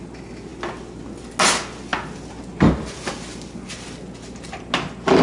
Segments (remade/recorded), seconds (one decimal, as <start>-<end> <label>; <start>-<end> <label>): 0.0-5.2 recorded